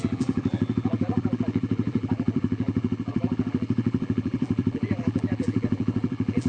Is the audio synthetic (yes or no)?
yes